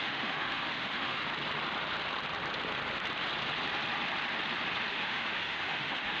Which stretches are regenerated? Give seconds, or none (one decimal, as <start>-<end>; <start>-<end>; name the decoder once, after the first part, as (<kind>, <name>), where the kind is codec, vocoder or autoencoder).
0.0-1.2 (autoencoder, DAC-VAE); 4.9-6.2